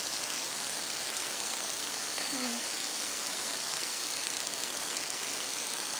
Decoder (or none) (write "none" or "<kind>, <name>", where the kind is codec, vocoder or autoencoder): codec, SNAC